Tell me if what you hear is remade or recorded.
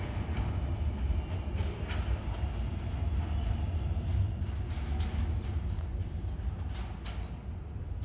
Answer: recorded